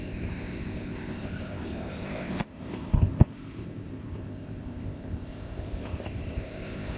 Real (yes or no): no